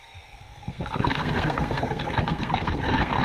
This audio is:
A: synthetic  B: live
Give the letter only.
A